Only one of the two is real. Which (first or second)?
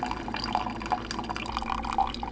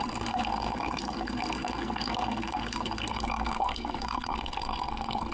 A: first